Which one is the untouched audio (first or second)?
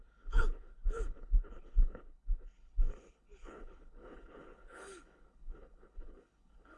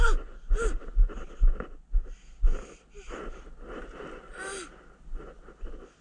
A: second